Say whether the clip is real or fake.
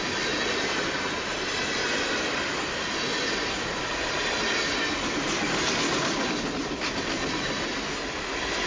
real